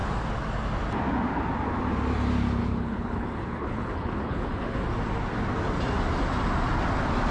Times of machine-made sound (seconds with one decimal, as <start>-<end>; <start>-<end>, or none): 2.6-4.9